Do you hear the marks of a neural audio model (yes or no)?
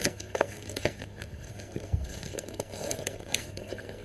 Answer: yes